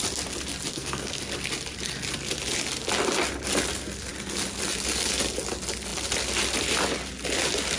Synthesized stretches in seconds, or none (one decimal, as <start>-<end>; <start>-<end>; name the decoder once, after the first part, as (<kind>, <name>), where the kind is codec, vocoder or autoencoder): 0.7-1.2 (codec, SNAC)